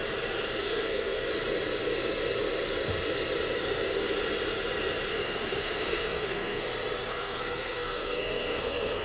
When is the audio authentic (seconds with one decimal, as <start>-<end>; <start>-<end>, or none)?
0.0-0.6; 1.3-5.1; 6.6-7.1